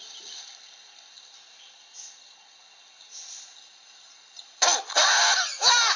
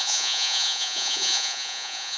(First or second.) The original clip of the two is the first